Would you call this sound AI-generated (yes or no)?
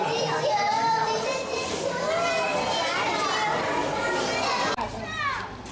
no